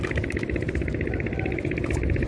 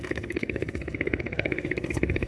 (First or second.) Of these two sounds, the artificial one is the second